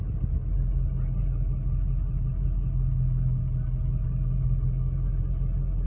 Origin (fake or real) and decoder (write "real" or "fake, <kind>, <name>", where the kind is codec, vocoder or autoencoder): real